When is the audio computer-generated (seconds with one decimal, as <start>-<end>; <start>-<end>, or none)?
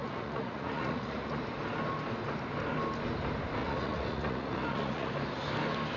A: 0.0-1.4; 3.6-5.1